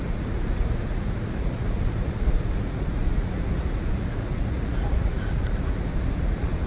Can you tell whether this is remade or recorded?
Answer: remade